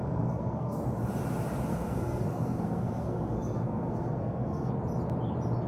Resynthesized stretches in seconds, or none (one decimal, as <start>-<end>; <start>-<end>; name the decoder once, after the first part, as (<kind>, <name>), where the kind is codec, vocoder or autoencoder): 0.0-0.8 (codec, SNAC); 1.7-4.7